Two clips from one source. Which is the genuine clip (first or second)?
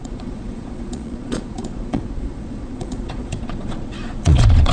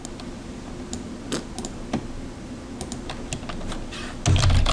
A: second